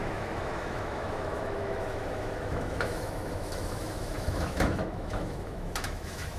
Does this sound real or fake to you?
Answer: fake